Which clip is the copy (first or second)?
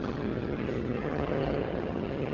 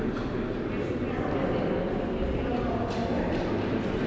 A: first